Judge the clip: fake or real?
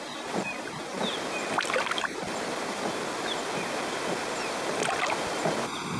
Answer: real